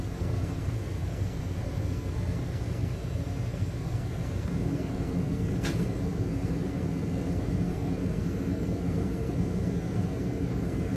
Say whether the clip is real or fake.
fake